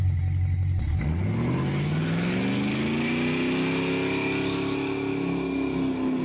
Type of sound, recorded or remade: recorded